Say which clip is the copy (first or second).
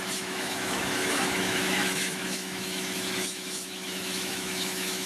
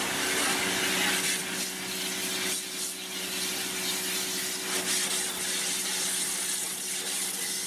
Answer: first